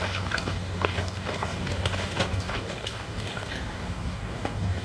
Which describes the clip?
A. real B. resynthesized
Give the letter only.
B